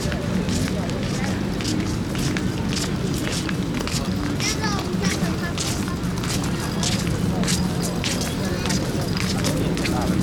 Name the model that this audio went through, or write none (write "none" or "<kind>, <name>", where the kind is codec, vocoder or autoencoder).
none